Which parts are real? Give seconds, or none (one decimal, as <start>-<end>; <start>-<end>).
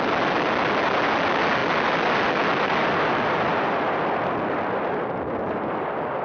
0.0-6.2